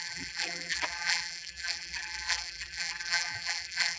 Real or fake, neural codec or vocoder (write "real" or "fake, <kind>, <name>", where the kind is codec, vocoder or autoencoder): fake, vocoder, BigVGAN v2